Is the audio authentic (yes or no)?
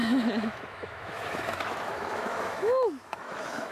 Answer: no